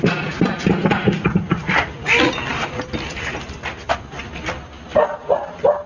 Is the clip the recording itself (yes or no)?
yes